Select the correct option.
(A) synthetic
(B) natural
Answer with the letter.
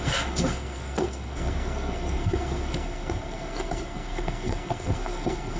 A